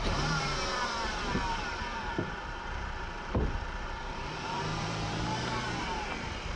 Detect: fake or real fake